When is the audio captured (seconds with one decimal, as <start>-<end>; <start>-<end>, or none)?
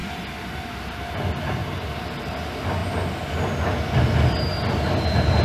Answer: 0.0-1.6; 2.3-5.4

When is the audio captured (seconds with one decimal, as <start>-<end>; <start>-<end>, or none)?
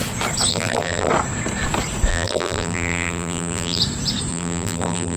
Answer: 0.0-0.5; 1.1-2.1; 3.8-4.3